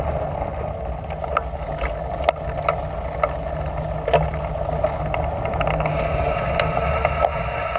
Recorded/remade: recorded